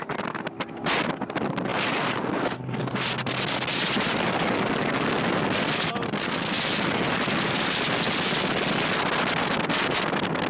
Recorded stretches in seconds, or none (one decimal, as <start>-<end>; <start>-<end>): 0.0-10.5